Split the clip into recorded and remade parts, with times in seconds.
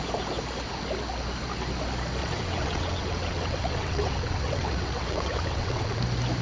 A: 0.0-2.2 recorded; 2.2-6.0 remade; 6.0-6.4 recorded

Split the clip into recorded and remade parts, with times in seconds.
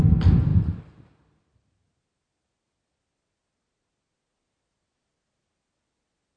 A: 0.0-6.4 recorded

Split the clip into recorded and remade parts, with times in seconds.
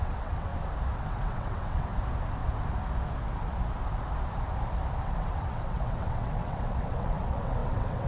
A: 0.0-0.5 remade; 0.5-1.0 recorded; 1.0-1.9 remade; 1.9-5.0 recorded; 5.0-8.1 remade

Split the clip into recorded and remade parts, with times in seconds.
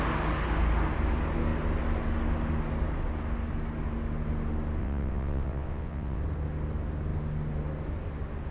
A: 0.0-4.8 recorded; 4.8-6.2 remade; 6.2-8.5 recorded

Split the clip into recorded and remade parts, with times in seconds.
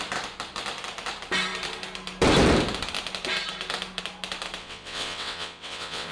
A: 0.0-4.6 recorded; 4.6-6.1 remade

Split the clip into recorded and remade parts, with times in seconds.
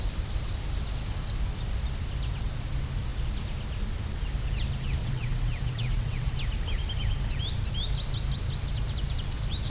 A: 0.0-5.0 recorded; 5.0-6.3 remade; 6.3-9.7 recorded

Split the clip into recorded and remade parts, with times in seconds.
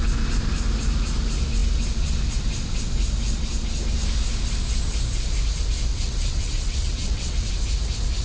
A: 0.0-5.9 recorded; 5.9-7.5 remade; 7.5-8.2 recorded